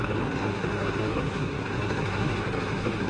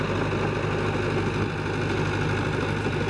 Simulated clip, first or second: first